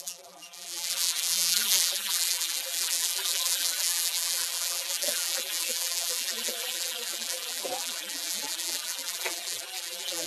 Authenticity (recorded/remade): remade